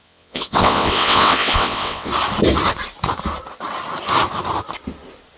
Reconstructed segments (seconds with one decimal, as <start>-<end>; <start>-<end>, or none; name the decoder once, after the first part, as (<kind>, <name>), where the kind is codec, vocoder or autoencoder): 0.0-2.1 (vocoder, WaveNeXt)

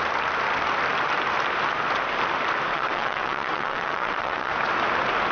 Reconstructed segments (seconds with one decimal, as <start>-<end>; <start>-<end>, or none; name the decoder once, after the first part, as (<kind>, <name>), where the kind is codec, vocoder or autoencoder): 2.7-4.5 (vocoder, WaveNeXt)

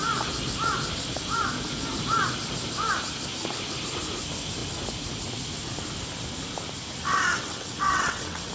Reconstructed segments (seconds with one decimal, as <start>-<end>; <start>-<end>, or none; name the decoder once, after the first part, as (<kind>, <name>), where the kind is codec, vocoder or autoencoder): 7.3-8.5 (vocoder, WaveNeXt)